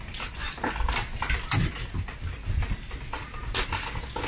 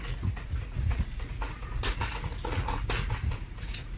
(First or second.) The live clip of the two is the first